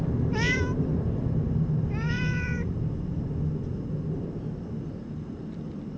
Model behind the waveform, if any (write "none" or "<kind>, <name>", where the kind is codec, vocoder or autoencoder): none